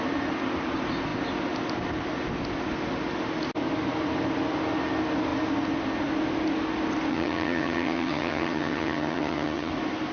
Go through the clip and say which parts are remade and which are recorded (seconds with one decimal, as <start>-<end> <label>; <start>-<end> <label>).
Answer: 0.0-7.1 recorded; 7.1-9.7 remade; 9.7-10.1 recorded